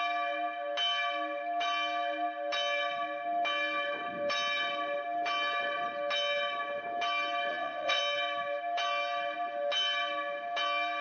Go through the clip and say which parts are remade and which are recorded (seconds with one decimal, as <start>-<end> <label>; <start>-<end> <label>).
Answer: 0.0-7.5 recorded; 7.5-8.0 remade; 8.0-11.0 recorded